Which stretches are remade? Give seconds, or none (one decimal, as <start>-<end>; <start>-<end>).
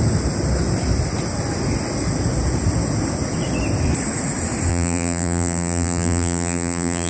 4.7-7.1